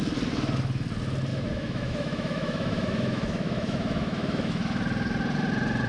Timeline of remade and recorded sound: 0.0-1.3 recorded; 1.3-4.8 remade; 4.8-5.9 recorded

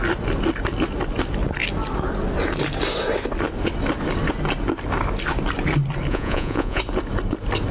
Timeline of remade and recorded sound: 0.0-6.1 recorded; 6.1-6.8 remade; 6.8-7.7 recorded

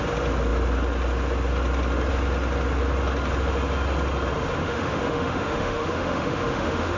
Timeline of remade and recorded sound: 0.0-4.6 recorded; 4.6-7.0 remade

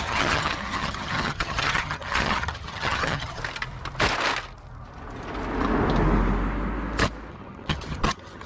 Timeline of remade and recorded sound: 0.0-3.4 remade; 3.4-7.3 recorded; 7.3-8.5 remade

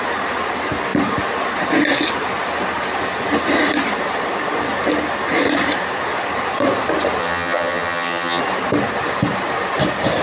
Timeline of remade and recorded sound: 0.0-7.2 recorded; 7.2-8.4 remade; 8.4-10.2 recorded

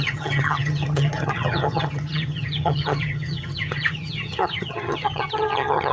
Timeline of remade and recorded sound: 0.0-5.9 remade

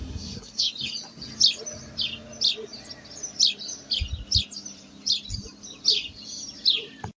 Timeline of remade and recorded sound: 0.0-0.7 remade; 0.7-7.2 recorded